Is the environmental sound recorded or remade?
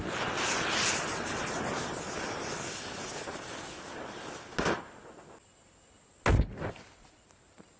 recorded